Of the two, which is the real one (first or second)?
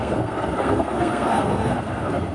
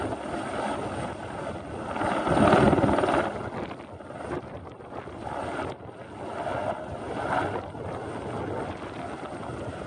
second